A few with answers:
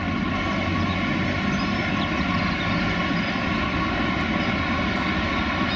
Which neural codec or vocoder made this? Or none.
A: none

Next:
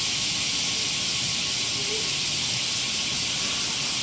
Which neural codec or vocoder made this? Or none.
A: none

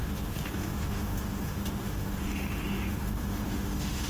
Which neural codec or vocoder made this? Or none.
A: autoencoder, DAC-VAE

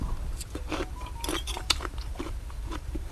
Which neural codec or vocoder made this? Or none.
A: vocoder, BigVGAN v2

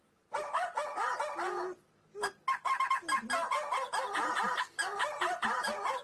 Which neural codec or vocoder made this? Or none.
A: none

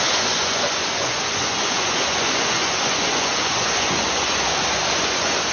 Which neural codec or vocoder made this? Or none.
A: vocoder, Vocos